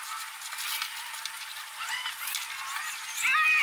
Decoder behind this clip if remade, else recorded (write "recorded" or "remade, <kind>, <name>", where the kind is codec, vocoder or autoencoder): recorded